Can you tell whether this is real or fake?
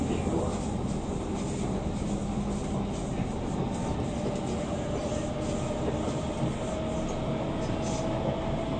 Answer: real